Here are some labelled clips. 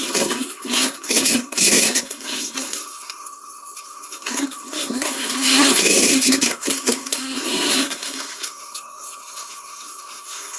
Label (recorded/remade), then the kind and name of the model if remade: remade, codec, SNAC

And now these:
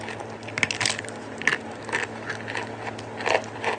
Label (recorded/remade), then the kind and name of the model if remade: recorded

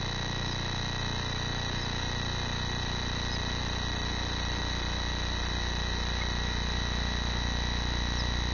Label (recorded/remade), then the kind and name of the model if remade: recorded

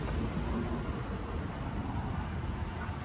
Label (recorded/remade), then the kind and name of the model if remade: recorded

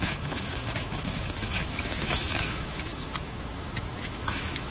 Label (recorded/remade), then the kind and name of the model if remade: remade, autoencoder, DAC-VAE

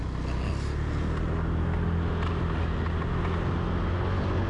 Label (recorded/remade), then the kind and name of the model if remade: recorded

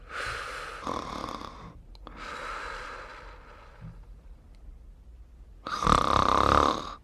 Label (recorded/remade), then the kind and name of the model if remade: recorded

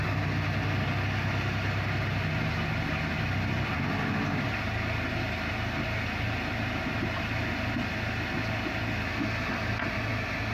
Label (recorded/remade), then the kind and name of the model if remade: recorded